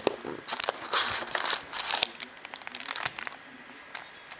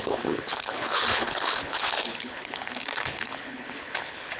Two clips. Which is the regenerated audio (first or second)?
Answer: second